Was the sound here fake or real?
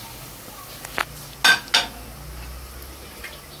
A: real